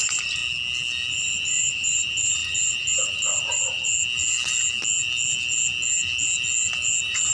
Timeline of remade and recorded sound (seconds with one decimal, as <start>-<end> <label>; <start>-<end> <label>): 0.0-0.4 remade; 0.4-1.1 recorded; 1.1-3.9 remade; 3.9-7.3 recorded